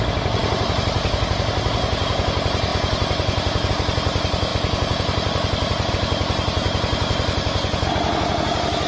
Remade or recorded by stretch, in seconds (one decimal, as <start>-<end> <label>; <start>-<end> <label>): 0.0-8.9 recorded